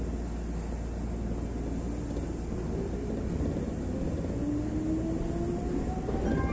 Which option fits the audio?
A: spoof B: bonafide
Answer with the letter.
B